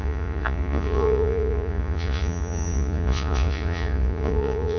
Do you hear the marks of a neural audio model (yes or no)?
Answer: yes